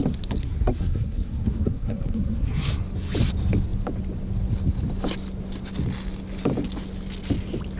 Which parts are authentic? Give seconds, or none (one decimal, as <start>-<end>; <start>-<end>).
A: 0.0-0.4; 2.7-7.8